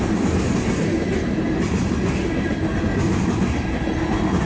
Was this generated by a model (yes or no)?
no